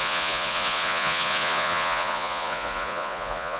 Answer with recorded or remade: remade